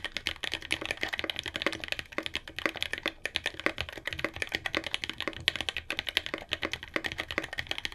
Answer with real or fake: real